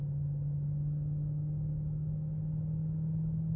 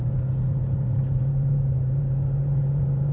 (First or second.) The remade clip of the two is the second